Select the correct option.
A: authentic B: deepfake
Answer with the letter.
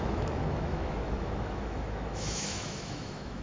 B